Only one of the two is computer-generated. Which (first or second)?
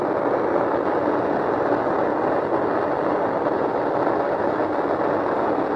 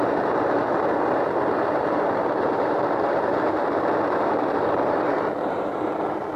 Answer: second